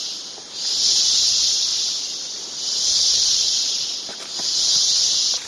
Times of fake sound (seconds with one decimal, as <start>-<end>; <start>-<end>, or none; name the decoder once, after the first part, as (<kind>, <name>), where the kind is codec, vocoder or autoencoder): 1.7-5.0 (vocoder, BigVGAN v2)